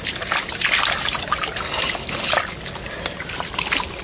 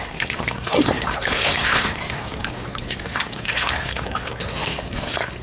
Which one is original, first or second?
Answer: first